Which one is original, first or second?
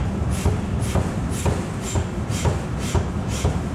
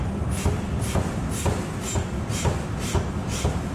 second